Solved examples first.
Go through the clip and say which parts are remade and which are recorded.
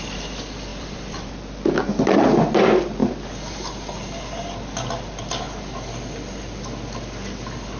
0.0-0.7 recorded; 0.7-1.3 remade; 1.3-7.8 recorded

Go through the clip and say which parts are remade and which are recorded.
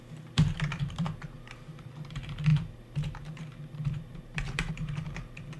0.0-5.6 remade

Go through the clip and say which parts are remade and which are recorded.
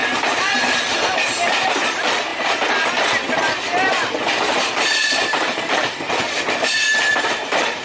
0.0-7.8 remade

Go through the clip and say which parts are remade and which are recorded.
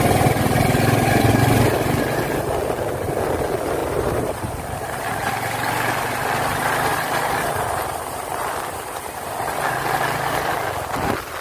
0.0-3.8 recorded; 3.8-5.0 remade; 5.0-11.4 recorded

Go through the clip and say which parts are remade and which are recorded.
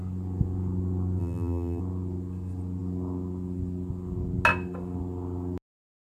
0.0-1.2 recorded; 1.2-1.8 remade; 1.8-6.1 recorded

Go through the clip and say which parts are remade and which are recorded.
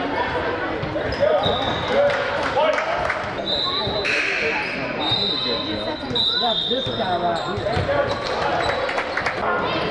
0.0-9.9 recorded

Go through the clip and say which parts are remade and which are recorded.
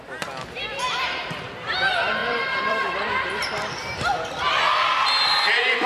0.0-2.2 recorded; 2.2-4.6 remade; 4.6-5.9 recorded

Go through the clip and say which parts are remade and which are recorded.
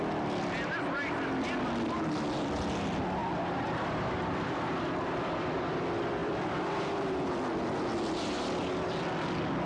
0.0-3.2 recorded; 3.2-5.8 remade; 5.8-6.2 recorded; 6.2-7.5 remade; 7.5-9.7 recorded